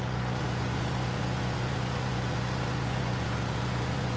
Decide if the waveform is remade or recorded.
remade